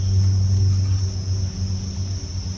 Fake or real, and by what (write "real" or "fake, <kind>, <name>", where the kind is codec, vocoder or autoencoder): real